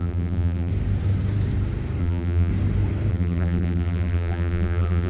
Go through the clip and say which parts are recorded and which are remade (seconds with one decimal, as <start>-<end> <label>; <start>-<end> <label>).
0.0-0.7 remade; 0.7-2.0 recorded; 2.0-2.5 remade; 2.5-3.1 recorded; 3.1-5.1 remade